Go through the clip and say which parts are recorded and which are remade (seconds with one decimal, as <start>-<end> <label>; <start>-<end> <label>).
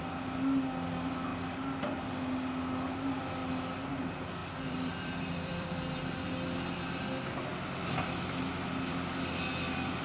0.0-4.4 recorded; 4.4-6.0 remade; 6.0-10.0 recorded